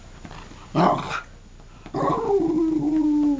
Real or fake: real